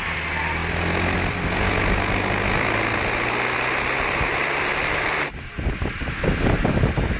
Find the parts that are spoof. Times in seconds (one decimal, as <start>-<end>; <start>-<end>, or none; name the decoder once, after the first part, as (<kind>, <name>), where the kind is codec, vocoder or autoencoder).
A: none